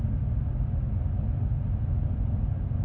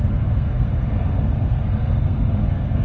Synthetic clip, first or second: second